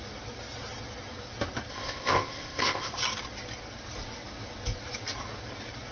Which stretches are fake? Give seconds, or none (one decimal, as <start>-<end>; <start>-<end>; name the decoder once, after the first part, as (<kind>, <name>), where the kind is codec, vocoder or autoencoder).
1.7-2.9 (codec, ZipCodec)